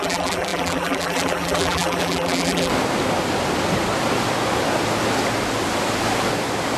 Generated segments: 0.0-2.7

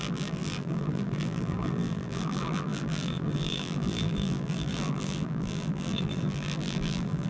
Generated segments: 0.0-7.3

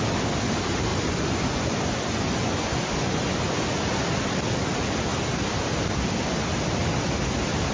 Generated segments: 0.9-3.8

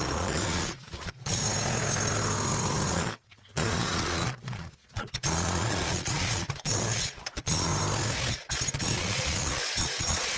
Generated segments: 0.0-1.4; 2.9-7.7; 8.7-10.4

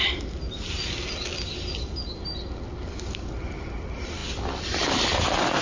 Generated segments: none

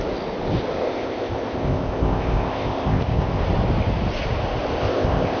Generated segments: 0.8-3.4; 4.8-5.4

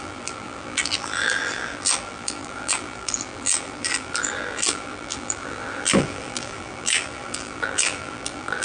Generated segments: 0.0-8.6

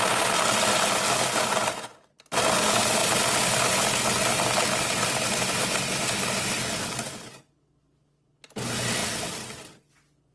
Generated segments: none